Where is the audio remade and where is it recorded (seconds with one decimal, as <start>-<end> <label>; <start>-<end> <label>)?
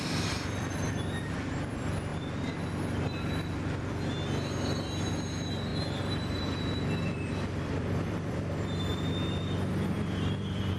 0.0-2.1 remade; 2.1-5.0 recorded; 5.0-8.9 remade; 8.9-9.7 recorded; 9.7-10.8 remade